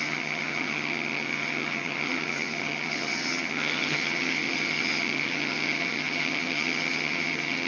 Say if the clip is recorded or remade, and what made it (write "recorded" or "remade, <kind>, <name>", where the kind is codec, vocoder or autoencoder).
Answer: remade, vocoder, HiFi-GAN